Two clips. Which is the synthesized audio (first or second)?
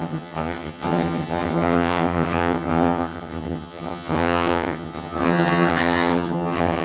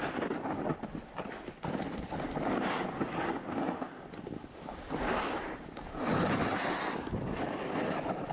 first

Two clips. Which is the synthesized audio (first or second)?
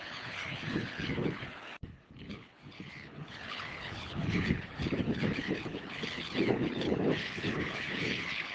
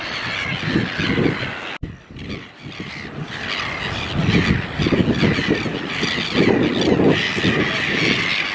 first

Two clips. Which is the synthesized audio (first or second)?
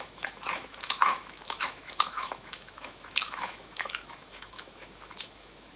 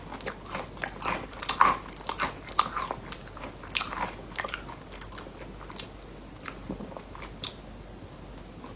first